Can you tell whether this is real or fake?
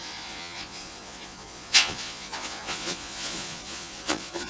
fake